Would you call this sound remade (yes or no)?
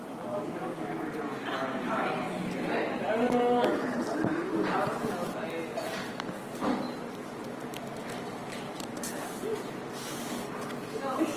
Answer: no